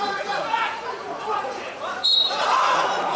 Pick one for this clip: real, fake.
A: fake